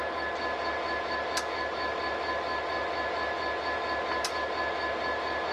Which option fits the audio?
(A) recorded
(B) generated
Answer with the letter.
A